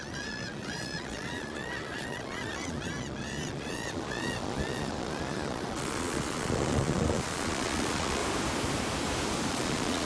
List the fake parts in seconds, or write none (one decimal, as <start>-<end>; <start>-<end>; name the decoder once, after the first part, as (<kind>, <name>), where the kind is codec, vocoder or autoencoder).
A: 0.0-8.2 (vocoder, Vocos); 9.5-10.0